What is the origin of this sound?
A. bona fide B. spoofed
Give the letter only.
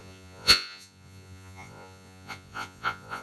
B